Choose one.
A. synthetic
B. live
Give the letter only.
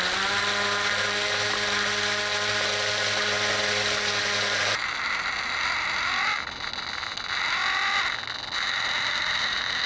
B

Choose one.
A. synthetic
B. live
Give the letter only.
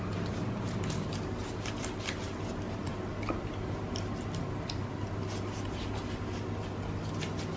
B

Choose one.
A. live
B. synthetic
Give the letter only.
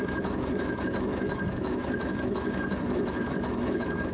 B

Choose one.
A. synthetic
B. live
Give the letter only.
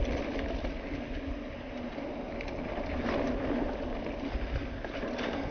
B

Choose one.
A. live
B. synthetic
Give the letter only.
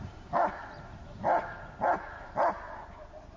A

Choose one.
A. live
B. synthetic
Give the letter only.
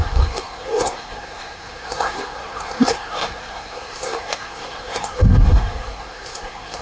B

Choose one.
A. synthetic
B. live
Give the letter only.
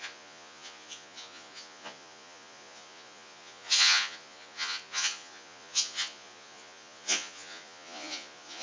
A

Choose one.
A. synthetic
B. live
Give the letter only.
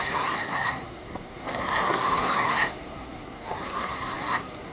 A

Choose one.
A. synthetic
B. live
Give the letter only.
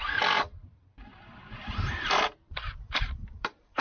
A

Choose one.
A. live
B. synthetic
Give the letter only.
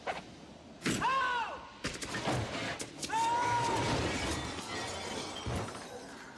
A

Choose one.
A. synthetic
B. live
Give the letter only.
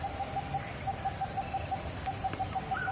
B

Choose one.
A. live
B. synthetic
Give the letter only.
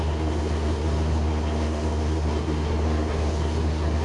B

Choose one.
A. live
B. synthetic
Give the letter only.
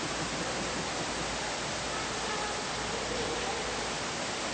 A